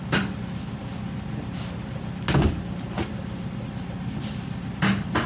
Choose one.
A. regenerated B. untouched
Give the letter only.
B